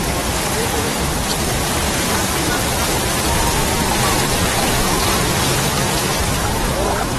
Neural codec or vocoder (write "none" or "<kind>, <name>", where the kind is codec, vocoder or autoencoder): vocoder, BigVGAN v2